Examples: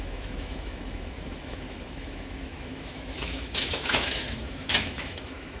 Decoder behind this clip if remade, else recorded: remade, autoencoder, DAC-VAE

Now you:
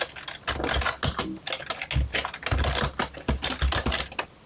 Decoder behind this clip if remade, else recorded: recorded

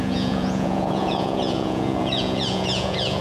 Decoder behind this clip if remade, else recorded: remade, vocoder, Vocos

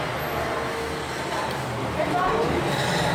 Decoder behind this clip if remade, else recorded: recorded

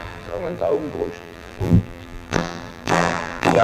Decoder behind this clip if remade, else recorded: remade, vocoder, BigVGAN v2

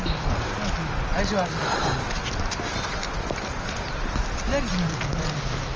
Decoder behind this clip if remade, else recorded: recorded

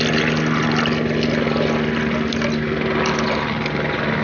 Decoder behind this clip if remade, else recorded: recorded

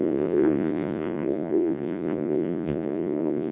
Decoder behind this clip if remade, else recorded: remade, vocoder, Vocos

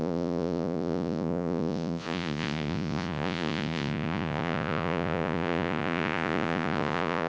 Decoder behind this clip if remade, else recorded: remade, vocoder, Vocos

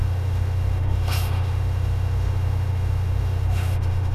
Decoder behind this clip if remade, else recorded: remade, autoencoder, DAC-VAE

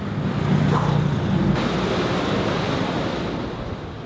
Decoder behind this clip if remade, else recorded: recorded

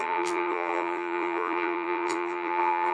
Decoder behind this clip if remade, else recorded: remade, vocoder, BigVGAN v2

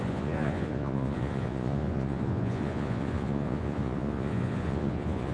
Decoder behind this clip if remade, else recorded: remade, vocoder, Vocos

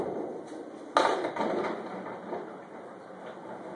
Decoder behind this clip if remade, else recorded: recorded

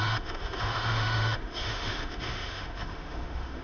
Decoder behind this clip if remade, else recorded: remade, autoencoder, DAC-VAE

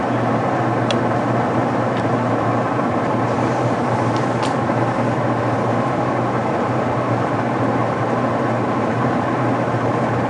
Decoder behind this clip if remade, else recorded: remade, vocoder, BigVGAN v2